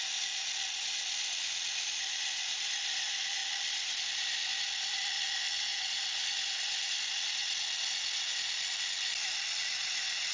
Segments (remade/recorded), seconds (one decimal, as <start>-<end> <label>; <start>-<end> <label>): 0.0-10.3 recorded